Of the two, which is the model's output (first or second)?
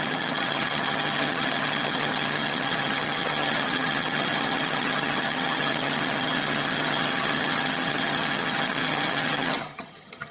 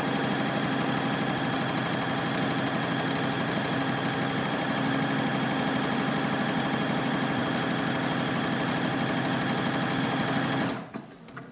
first